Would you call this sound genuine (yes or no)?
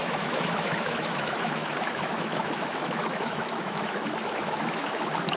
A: no